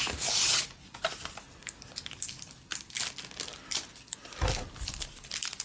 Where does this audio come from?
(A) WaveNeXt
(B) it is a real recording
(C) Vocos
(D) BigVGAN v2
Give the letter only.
B